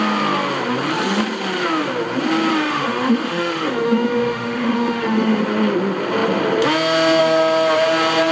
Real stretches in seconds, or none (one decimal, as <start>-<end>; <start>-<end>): 0.0-2.5; 5.4-8.3